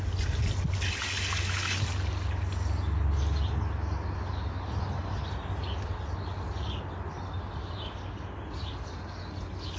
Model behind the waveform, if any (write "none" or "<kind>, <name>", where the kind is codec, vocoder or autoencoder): none